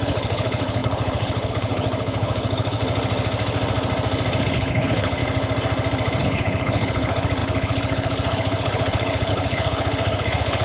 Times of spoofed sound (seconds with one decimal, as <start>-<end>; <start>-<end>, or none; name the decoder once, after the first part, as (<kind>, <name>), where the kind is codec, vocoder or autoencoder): 0.0-2.8 (codec, HILCodec); 4.4-5.2; 6.2-10.6